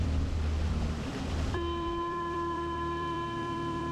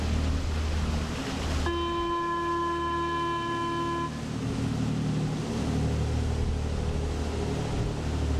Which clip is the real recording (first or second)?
second